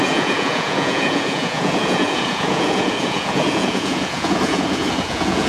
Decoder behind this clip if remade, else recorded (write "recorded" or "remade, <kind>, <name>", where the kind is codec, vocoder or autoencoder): remade, vocoder, Vocos